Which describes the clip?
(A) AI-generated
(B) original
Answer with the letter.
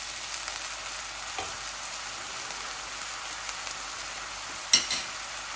B